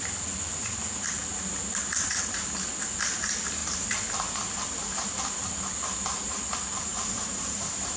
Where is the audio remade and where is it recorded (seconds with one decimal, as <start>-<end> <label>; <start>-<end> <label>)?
0.0-6.9 recorded; 6.9-8.0 remade